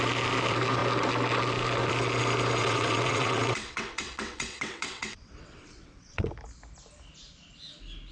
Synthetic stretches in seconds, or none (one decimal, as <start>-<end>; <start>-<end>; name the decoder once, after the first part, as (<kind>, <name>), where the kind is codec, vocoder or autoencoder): 2.6-6.3 (vocoder, WaveNeXt)